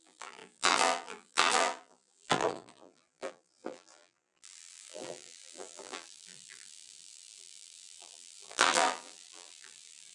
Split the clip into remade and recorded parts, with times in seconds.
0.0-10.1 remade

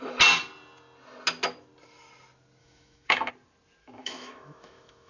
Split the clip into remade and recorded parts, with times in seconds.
0.0-2.6 recorded; 2.6-3.3 remade; 3.3-3.8 recorded; 3.8-5.1 remade

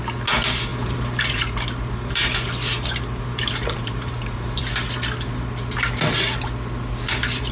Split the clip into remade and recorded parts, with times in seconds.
0.0-0.7 recorded; 0.7-4.6 remade; 4.6-7.5 recorded

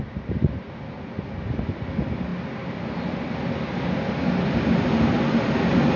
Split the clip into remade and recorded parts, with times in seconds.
0.0-6.0 recorded

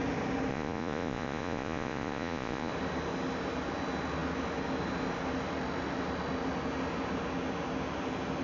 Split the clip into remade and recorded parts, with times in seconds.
0.0-0.5 recorded; 0.5-2.7 remade; 2.7-8.4 recorded

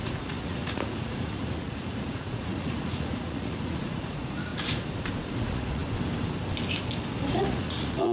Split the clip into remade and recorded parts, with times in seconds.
0.0-4.5 remade; 4.5-5.3 recorded; 5.3-5.8 remade; 5.8-7.3 recorded; 7.3-8.1 remade

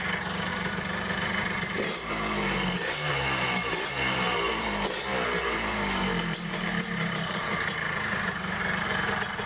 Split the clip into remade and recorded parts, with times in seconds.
0.0-9.5 remade

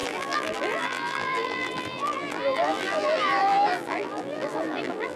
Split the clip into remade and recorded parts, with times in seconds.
0.0-5.2 remade